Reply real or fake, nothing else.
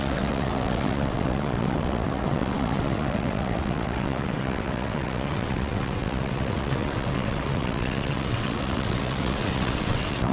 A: fake